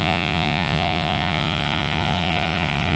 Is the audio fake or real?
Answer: fake